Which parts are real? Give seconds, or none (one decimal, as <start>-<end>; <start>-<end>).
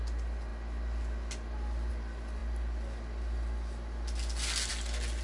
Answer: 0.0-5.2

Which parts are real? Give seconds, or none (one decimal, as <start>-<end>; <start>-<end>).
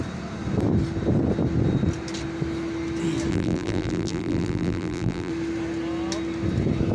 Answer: 0.0-3.3; 5.3-6.9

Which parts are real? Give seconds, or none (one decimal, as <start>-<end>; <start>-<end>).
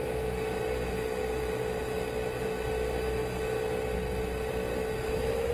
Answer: 0.0-4.7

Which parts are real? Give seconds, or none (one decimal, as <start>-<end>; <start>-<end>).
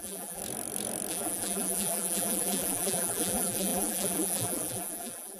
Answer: 0.4-1.1